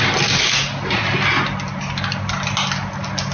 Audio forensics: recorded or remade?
recorded